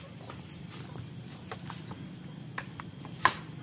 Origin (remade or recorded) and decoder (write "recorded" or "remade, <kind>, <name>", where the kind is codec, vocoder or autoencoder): remade, vocoder, BigVGAN v2